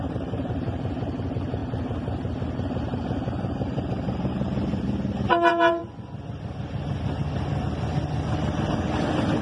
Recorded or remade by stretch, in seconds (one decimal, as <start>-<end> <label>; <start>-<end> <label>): 0.0-5.8 remade; 5.8-9.4 recorded